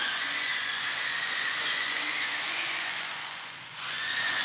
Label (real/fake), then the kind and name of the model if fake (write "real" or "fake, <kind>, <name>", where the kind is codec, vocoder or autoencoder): fake, vocoder, Vocos